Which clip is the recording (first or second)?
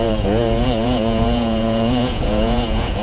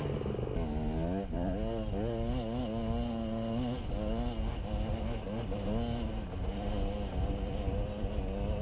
second